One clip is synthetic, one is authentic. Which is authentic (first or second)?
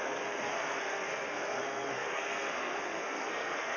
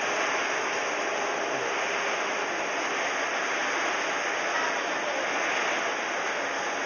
second